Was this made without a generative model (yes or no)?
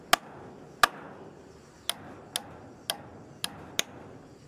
yes